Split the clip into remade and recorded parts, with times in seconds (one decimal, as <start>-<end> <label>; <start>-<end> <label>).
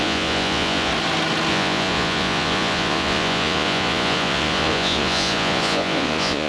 0.0-0.9 remade; 0.9-1.5 recorded; 1.5-6.5 remade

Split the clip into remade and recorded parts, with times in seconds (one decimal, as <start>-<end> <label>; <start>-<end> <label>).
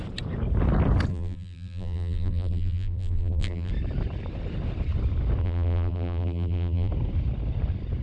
0.0-1.1 recorded; 1.1-3.7 remade; 3.7-5.4 recorded; 5.4-6.9 remade; 6.9-8.0 recorded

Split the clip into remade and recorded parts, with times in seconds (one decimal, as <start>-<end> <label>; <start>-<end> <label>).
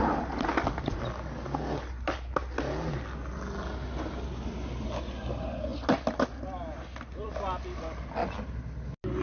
0.0-9.2 recorded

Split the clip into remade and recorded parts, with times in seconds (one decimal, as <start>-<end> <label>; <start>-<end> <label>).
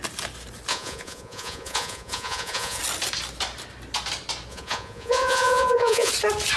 0.0-0.7 recorded; 0.7-2.8 remade; 2.8-4.5 recorded; 4.5-6.1 remade; 6.1-6.6 recorded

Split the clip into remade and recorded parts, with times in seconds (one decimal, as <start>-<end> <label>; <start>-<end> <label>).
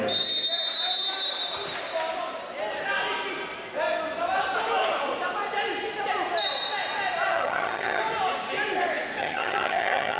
0.0-7.3 recorded; 7.3-8.0 remade; 8.0-9.2 recorded; 9.2-10.2 remade